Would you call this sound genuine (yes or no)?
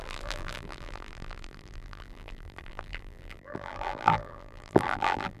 no